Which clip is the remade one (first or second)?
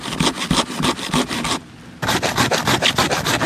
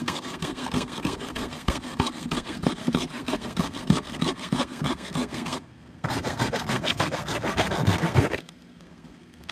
second